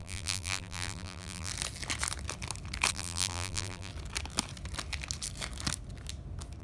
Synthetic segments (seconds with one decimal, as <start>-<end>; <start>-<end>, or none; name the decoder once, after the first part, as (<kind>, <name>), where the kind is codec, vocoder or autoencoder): 0.0-1.5 (vocoder, BigVGAN v2); 2.9-3.9